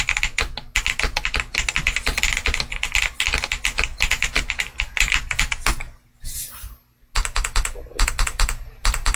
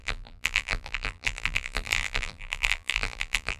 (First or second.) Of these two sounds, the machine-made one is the second